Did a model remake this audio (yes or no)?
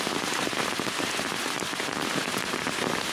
yes